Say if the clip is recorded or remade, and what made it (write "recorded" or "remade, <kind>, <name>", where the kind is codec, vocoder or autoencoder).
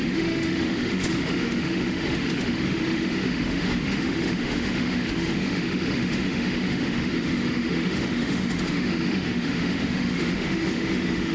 remade, autoencoder, DAC-VAE